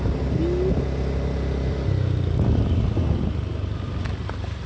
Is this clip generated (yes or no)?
no